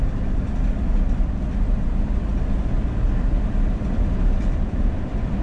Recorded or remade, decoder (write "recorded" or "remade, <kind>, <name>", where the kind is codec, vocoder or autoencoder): remade, vocoder, BigVGAN v2